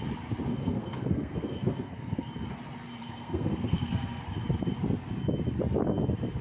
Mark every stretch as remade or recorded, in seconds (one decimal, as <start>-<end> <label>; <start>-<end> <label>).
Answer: 0.0-0.5 recorded; 0.5-2.3 remade; 2.3-3.0 recorded; 3.0-4.2 remade; 4.2-6.4 recorded